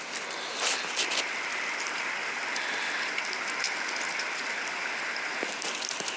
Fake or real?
real